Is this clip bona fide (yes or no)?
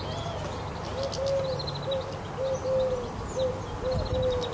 yes